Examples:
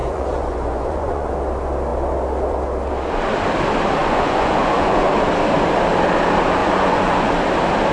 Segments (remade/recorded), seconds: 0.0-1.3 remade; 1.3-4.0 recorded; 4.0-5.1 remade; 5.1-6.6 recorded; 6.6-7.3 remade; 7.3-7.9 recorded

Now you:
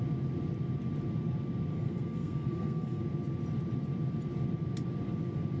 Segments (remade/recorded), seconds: 0.0-1.7 recorded; 1.7-3.0 remade; 3.0-5.6 recorded

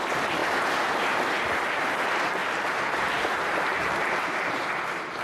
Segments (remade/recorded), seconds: 0.0-2.4 recorded; 2.4-3.3 remade; 3.3-3.7 recorded; 3.7-4.6 remade; 4.6-5.2 recorded

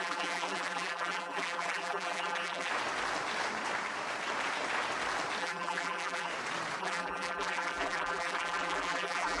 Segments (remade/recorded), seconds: 0.0-2.7 remade; 2.7-5.4 recorded; 5.4-6.3 remade; 6.3-6.8 recorded; 6.8-9.4 remade

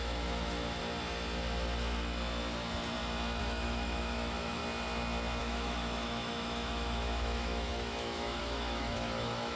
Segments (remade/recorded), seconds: 0.0-0.8 remade; 0.8-3.4 recorded; 3.4-4.6 remade; 4.6-5.4 recorded; 5.4-9.6 remade

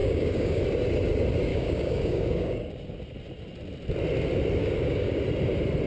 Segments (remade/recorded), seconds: 0.0-0.6 remade; 0.6-1.5 recorded; 1.5-2.7 remade; 2.7-4.6 recorded; 4.6-5.2 remade; 5.2-5.9 recorded

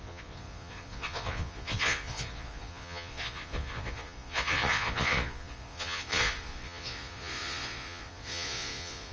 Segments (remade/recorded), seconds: 0.0-9.1 remade

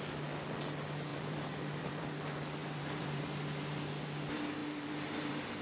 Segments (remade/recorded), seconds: 0.0-1.1 recorded; 1.1-2.1 remade; 2.1-2.6 recorded; 2.6-3.2 remade; 3.2-4.6 recorded; 4.6-5.6 remade